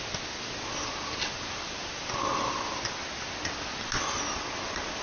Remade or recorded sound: recorded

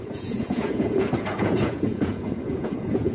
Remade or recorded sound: remade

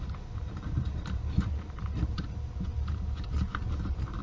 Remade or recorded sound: remade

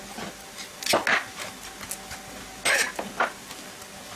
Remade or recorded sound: recorded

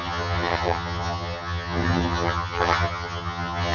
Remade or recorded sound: remade